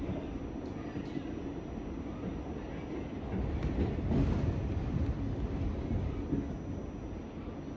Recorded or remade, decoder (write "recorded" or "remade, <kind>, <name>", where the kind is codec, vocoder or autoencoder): recorded